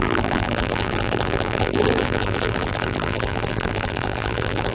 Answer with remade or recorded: remade